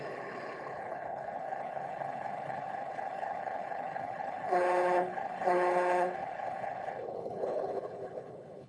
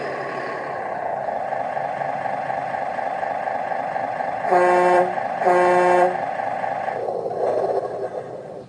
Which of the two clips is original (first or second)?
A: second